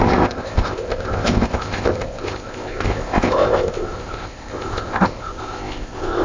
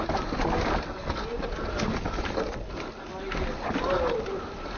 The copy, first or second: first